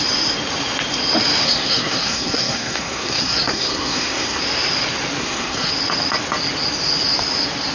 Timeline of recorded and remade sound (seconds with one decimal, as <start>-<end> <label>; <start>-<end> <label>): 0.0-1.4 recorded; 1.4-4.4 remade; 4.4-5.2 recorded; 5.2-5.7 remade; 5.7-7.7 recorded